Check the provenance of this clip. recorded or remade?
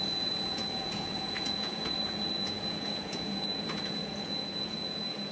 remade